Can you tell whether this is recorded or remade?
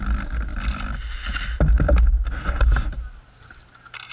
recorded